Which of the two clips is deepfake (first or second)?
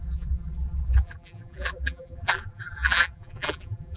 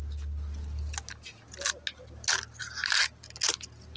first